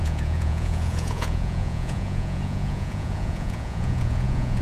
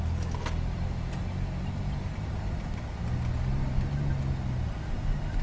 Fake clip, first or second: first